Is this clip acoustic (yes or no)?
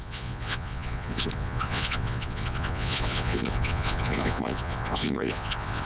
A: no